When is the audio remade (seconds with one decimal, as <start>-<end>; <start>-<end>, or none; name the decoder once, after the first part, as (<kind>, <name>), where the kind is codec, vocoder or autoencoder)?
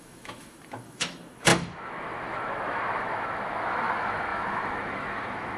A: 0.0-5.6 (autoencoder, DAC-VAE)